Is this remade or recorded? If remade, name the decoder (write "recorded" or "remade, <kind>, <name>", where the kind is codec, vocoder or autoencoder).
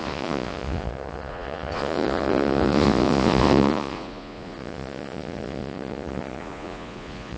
remade, vocoder, Vocos